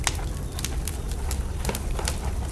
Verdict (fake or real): real